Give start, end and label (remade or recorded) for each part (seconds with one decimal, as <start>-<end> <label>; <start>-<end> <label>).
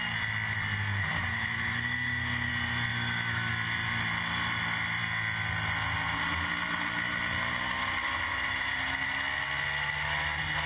0.0-1.1 recorded; 1.1-2.5 remade; 2.5-2.9 recorded; 2.9-3.5 remade; 3.5-10.7 recorded